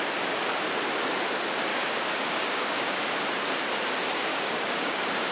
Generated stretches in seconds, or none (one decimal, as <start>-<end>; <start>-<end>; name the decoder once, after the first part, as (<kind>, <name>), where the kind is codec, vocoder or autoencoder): 1.7-3.0 (codec, DAC); 4.3-5.3